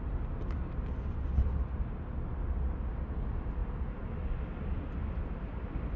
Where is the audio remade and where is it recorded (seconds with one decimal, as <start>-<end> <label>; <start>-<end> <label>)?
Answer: 0.0-6.0 recorded